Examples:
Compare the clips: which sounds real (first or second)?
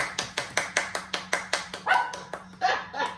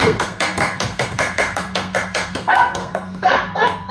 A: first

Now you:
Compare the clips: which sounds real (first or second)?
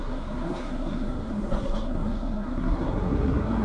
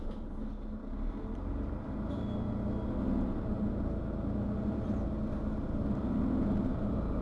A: second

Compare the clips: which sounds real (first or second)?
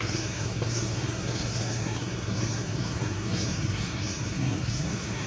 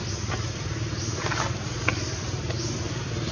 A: second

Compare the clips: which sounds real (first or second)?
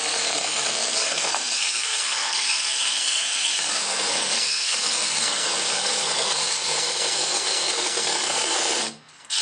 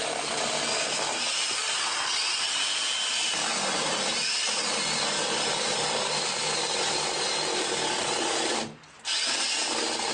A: second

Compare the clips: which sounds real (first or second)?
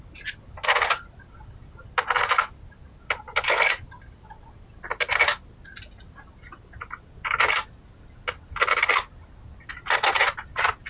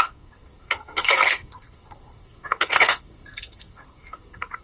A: first